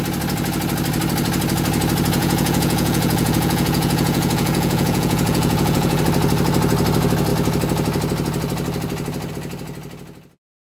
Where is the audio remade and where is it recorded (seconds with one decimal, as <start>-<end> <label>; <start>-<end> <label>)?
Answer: 0.0-2.2 recorded; 2.2-6.0 remade; 6.0-10.6 recorded